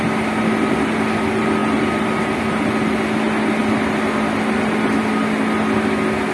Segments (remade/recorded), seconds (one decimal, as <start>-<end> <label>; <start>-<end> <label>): 0.0-6.3 recorded